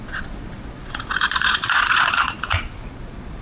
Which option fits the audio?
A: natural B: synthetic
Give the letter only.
B